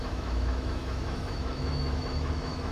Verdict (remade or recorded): remade